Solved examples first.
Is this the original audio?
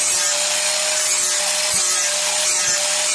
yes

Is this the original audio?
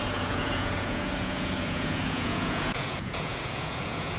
no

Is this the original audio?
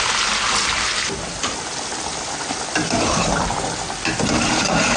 no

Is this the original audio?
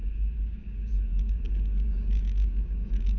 no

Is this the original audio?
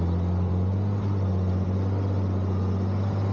yes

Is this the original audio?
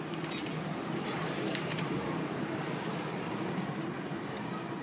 no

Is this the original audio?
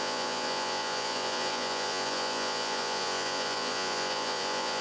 no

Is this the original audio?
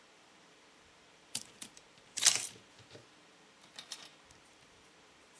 no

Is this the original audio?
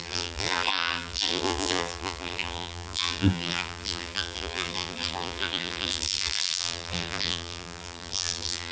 no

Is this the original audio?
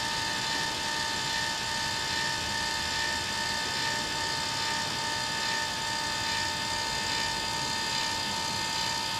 yes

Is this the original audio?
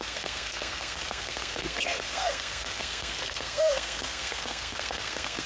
no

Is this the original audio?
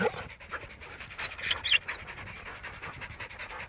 yes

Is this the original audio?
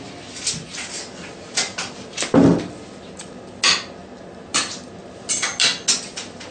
yes